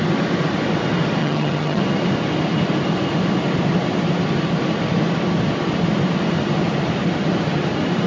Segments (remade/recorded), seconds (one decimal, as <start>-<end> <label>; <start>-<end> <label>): 0.0-1.2 recorded; 1.2-1.8 remade; 1.8-8.1 recorded